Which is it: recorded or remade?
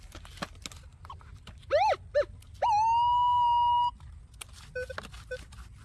recorded